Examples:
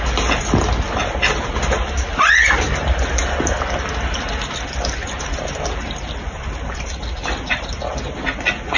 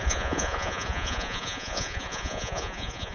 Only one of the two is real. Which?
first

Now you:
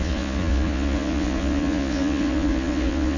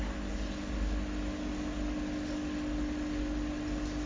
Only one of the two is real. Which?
second